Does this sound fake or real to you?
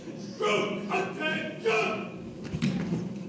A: real